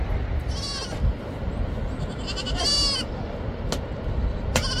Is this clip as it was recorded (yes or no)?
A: yes